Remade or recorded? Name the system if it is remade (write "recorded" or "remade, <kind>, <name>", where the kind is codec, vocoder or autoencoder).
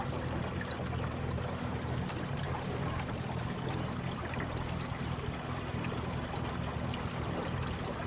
recorded